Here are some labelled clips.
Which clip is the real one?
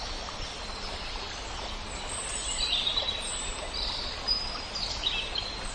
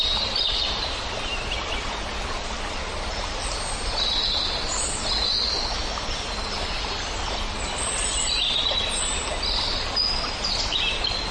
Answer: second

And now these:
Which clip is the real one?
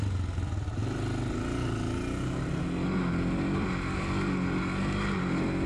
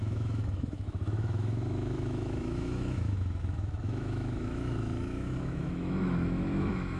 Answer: first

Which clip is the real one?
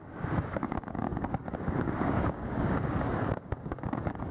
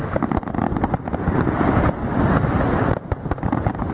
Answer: second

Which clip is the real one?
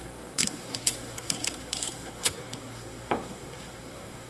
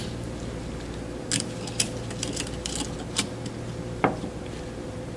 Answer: second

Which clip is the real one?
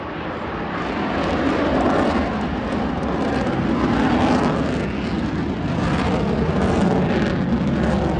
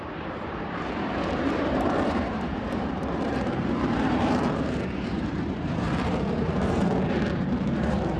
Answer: first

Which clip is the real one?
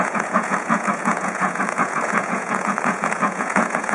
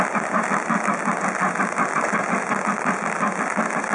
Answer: second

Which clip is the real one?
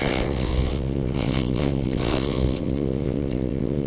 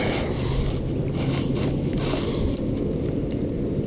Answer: second